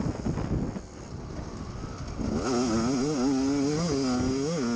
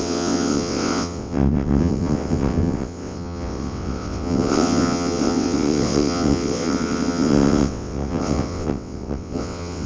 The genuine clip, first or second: first